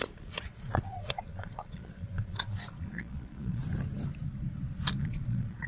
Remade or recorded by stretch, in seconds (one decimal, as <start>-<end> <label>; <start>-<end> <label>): 0.0-3.6 remade; 3.6-5.0 recorded; 5.0-5.7 remade